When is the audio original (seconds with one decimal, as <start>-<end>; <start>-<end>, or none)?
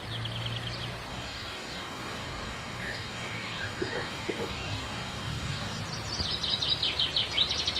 0.0-1.1; 5.8-7.8